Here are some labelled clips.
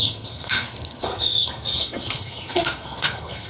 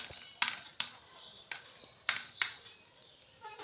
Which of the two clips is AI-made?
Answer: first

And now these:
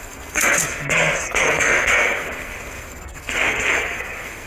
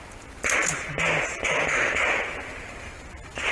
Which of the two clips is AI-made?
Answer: first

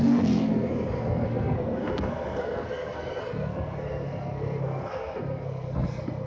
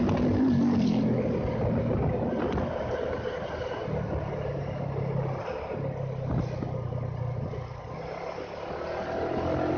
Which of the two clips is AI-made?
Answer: first